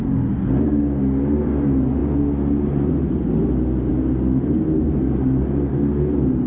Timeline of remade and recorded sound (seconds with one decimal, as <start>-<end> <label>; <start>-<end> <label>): 0.0-6.5 recorded